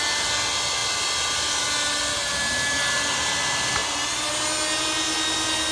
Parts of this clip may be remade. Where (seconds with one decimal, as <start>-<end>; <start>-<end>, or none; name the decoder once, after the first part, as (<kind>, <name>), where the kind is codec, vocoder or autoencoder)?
none